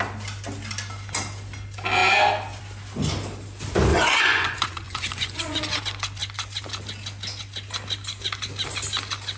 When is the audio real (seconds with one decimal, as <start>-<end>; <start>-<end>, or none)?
0.0-3.9; 5.8-9.4